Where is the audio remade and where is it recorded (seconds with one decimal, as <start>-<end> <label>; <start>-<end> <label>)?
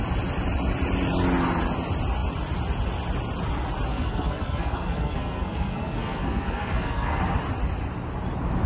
0.0-3.9 recorded; 3.9-7.2 remade; 7.2-8.7 recorded